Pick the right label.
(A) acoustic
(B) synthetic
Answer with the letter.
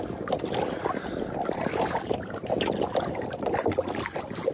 A